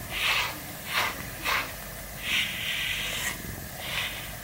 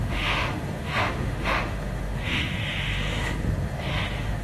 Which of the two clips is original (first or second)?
first